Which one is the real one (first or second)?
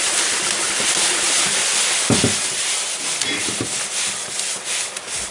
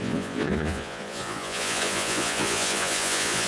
first